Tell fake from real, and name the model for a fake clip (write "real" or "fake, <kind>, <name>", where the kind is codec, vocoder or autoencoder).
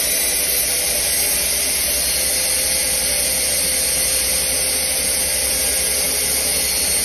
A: real